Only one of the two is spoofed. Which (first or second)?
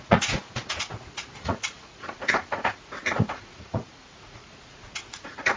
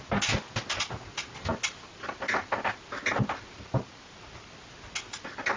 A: first